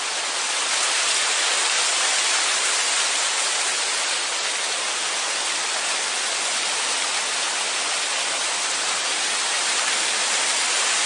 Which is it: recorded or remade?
recorded